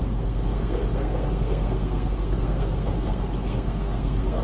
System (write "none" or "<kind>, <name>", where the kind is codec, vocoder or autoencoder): codec, SNAC